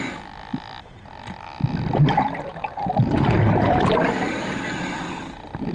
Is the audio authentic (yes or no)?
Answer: yes